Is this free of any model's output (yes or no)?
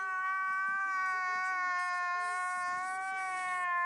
yes